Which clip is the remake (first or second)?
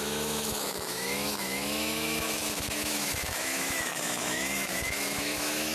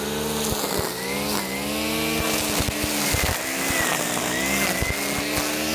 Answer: first